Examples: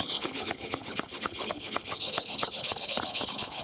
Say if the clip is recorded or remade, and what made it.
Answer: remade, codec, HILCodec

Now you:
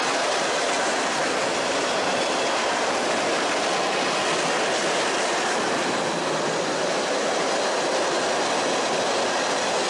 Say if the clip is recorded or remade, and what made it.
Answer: recorded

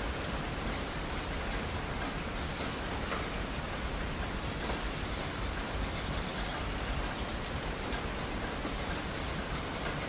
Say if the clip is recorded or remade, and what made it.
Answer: recorded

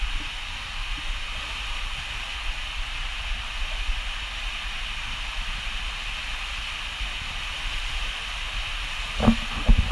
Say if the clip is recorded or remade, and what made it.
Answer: recorded